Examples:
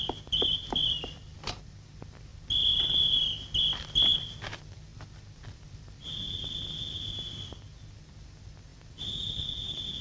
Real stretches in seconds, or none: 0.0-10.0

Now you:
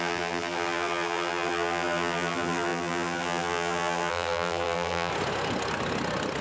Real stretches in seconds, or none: 5.1-6.4